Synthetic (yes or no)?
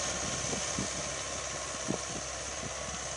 no